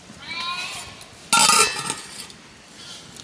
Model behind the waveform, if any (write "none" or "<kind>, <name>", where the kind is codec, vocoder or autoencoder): none